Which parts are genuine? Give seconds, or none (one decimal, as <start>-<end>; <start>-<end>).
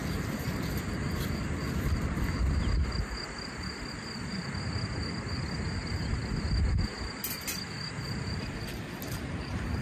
0.0-9.8